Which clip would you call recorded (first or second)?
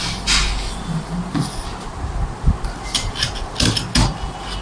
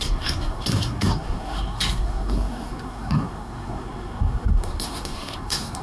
first